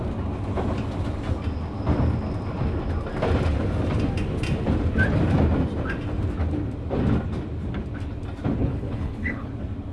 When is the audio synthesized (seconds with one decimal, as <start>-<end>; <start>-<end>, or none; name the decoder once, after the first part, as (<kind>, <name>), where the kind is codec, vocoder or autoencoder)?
8.6-9.5 (codec, HILCodec)